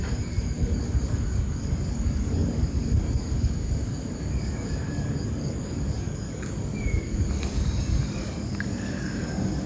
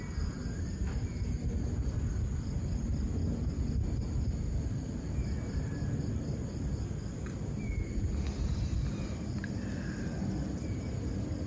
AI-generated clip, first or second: first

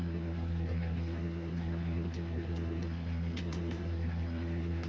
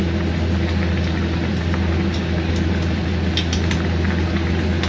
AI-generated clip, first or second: first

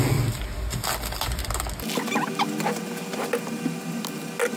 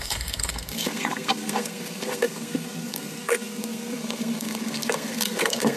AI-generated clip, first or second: second